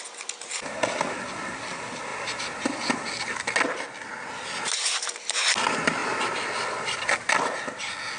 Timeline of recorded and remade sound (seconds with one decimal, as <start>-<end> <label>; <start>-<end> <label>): 0.0-8.2 recorded